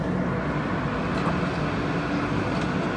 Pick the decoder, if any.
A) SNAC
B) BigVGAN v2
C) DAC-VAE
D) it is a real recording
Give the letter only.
D